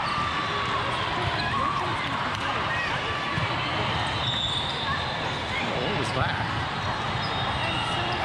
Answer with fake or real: fake